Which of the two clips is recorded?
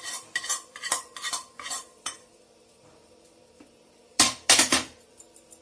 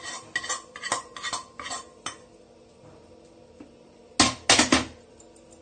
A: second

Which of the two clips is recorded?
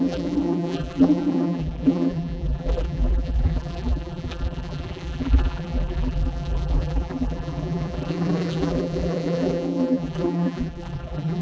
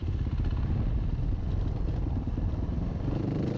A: second